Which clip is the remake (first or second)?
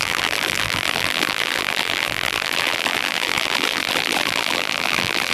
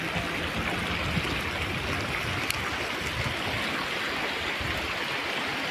first